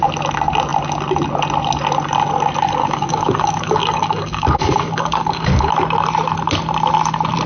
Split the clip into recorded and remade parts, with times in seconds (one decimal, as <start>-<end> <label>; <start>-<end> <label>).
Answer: 0.0-2.8 recorded; 2.8-5.7 remade; 5.7-7.5 recorded